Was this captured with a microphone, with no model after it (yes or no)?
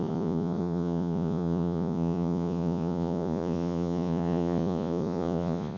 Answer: no